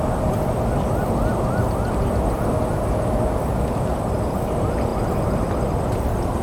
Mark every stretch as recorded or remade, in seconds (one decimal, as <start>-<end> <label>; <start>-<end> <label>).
0.0-6.4 recorded